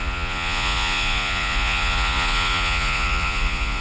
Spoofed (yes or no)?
yes